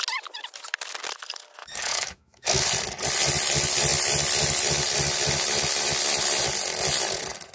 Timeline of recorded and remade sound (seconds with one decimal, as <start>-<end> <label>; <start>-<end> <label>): 0.0-1.6 recorded; 1.6-2.6 remade; 2.6-7.5 recorded